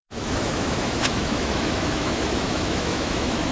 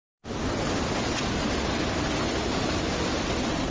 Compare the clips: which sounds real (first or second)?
second